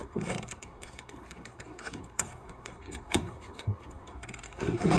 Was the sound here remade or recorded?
remade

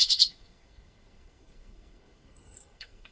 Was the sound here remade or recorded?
remade